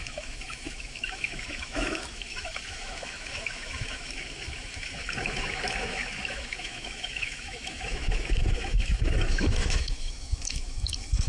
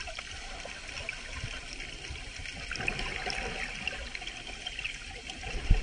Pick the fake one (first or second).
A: first